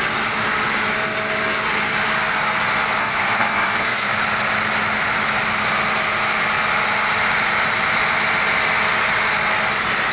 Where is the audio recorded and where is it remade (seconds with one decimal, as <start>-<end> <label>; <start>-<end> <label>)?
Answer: 0.0-3.0 recorded; 3.0-4.1 remade; 4.1-10.1 recorded